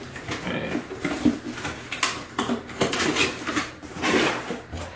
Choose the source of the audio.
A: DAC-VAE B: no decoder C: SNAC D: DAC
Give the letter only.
B